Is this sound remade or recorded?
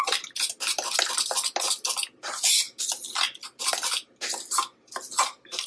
recorded